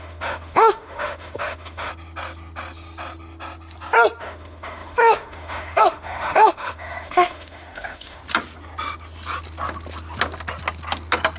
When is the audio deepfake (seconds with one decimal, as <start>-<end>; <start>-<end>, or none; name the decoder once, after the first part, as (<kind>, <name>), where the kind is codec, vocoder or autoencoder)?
0.0-1.9 (autoencoder, DAC-VAE); 4.2-8.2